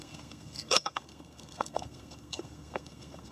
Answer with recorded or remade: remade